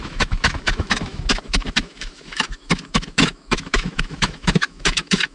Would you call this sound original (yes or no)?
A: no